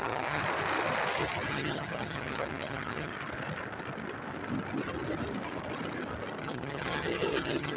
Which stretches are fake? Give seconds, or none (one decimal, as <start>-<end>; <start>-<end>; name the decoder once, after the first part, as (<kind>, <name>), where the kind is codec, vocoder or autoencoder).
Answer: 0.0-0.4 (vocoder, HiFi-GAN); 1.5-3.1; 6.4-7.8